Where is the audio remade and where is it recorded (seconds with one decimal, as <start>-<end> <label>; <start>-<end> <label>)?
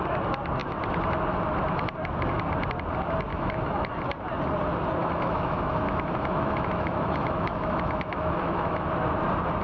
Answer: 0.0-3.3 recorded; 3.3-4.0 remade; 4.0-5.0 recorded; 5.0-8.8 remade; 8.8-9.6 recorded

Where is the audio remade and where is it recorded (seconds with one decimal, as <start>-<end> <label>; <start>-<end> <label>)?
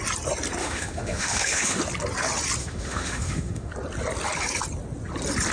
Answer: 0.0-0.6 recorded; 0.6-1.8 remade; 1.8-2.6 recorded; 2.6-3.7 remade; 3.7-5.5 recorded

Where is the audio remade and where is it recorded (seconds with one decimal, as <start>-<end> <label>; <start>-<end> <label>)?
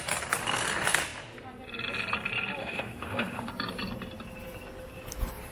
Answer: 0.0-2.6 recorded; 2.6-3.5 remade; 3.5-5.5 recorded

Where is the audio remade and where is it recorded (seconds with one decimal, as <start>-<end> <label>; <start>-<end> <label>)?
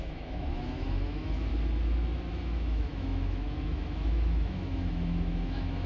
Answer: 0.0-1.5 remade; 1.5-2.3 recorded; 2.3-5.9 remade